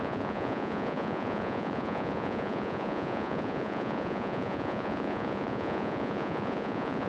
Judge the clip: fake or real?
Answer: fake